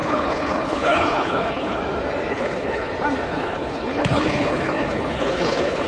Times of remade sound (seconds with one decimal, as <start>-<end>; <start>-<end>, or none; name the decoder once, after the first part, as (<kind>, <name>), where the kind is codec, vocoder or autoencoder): 0.0-1.8 (codec, HILCodec); 2.3-2.9; 3.3-5.9